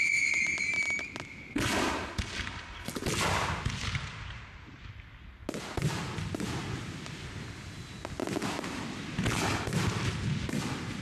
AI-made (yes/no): no